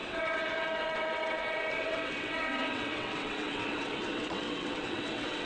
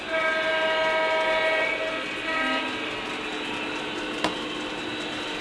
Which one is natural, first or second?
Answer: second